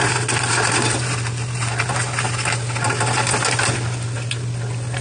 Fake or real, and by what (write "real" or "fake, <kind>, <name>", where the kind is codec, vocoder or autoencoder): real